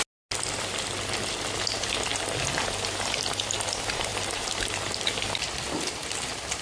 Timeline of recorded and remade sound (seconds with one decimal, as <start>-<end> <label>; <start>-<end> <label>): 0.0-4.1 recorded; 4.1-4.7 remade; 4.7-6.6 recorded